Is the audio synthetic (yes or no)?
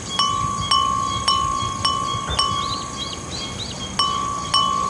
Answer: no